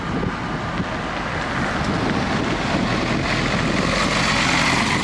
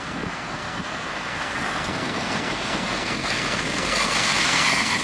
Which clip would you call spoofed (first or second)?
second